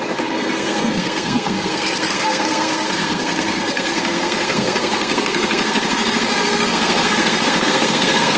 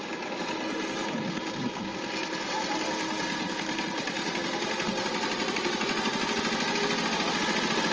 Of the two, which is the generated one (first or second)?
first